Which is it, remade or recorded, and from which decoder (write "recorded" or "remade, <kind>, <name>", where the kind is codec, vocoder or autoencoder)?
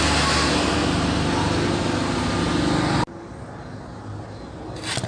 recorded